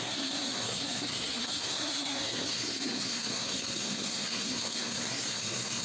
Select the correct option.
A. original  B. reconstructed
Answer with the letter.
B